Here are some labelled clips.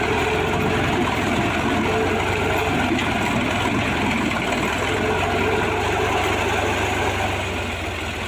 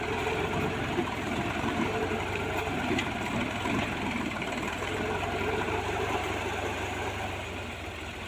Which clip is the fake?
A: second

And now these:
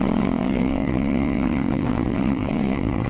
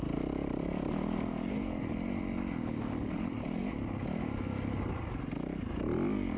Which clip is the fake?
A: first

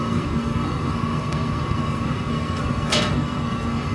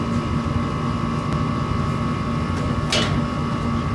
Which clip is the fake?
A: first